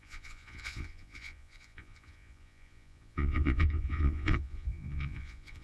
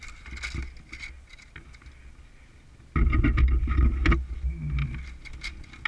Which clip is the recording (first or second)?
second